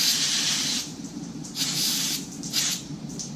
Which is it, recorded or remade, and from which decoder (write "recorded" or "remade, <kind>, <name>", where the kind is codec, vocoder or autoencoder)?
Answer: remade, vocoder, BigVGAN v2